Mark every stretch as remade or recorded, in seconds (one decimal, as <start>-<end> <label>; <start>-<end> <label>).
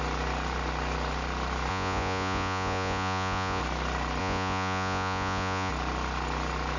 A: 0.0-1.7 recorded; 1.7-3.6 remade; 3.6-4.2 recorded; 4.2-5.7 remade; 5.7-6.8 recorded